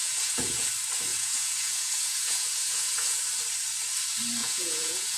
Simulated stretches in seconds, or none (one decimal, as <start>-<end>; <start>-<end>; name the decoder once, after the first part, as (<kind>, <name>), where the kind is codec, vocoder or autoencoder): 0.0-0.7 (vocoder, Vocos); 1.1-3.3; 4.4-5.2